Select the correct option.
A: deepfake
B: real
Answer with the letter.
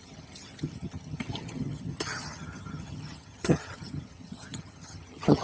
A